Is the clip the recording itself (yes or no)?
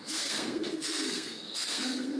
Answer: no